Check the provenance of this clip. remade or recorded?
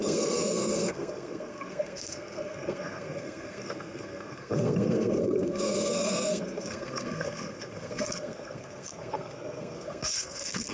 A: remade